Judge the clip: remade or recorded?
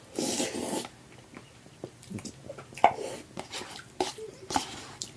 remade